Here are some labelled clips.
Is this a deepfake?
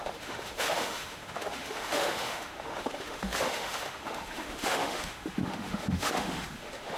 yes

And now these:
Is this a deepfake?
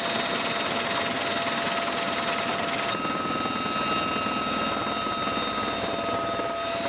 no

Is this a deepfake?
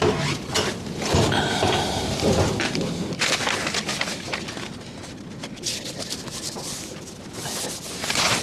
no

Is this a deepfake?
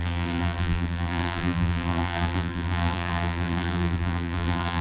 yes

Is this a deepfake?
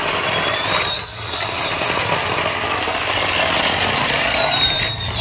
yes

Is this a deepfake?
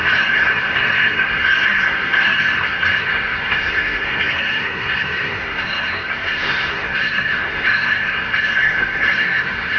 yes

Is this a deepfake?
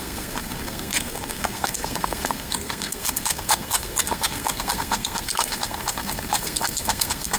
yes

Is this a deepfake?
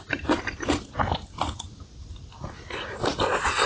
no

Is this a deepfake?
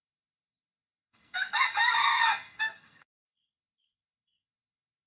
yes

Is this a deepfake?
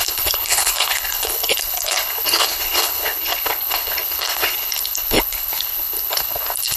yes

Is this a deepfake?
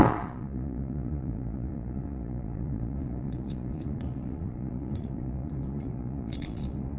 yes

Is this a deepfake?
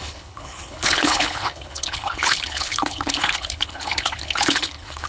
yes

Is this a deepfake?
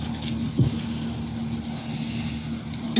no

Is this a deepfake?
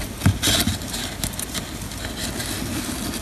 no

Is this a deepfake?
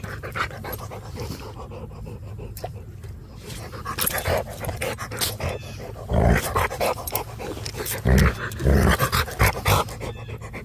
no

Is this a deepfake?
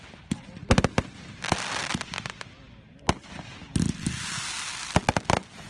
no